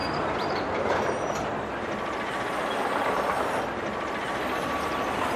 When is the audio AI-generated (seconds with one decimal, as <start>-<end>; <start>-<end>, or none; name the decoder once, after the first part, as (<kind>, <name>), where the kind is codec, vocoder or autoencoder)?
none